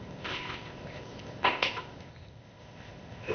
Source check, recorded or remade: remade